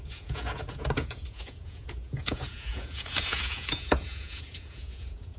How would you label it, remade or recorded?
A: remade